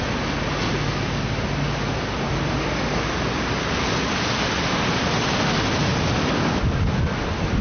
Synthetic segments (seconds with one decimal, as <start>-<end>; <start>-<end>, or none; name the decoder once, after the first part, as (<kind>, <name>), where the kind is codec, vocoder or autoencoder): none